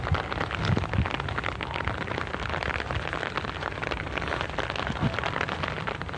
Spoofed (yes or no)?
no